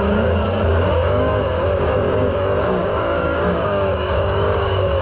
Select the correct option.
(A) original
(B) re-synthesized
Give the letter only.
B